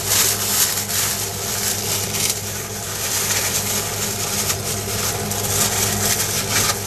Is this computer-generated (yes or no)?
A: no